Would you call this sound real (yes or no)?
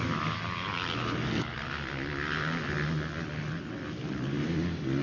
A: yes